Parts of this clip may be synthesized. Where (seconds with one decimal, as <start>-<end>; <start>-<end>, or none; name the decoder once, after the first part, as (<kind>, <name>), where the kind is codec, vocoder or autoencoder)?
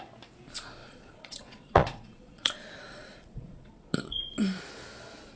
0.8-4.0 (vocoder, Vocos)